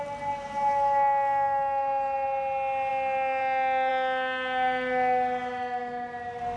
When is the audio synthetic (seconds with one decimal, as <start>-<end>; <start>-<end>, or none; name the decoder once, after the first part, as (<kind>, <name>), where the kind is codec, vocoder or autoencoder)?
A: none